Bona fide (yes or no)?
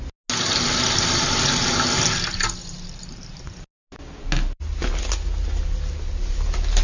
yes